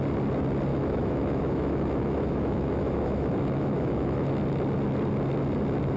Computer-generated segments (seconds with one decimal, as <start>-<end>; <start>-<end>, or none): 0.7-4.3